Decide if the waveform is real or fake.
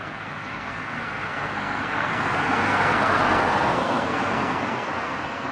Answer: fake